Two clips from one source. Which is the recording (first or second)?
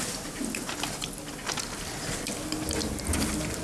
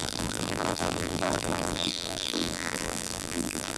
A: first